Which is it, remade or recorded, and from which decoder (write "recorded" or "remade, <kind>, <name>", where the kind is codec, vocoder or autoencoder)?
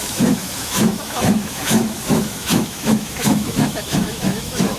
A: remade, autoencoder, DAC-VAE